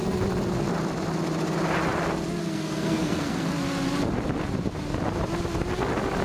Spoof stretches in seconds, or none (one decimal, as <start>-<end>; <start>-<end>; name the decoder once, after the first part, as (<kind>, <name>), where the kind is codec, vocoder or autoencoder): 2.4-3.5 (codec, SNAC)